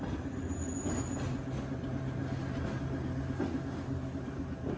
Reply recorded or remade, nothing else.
recorded